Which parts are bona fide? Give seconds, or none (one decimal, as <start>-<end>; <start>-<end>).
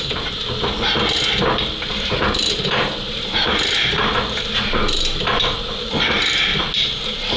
0.4-2.2; 4.8-5.4; 6.5-7.0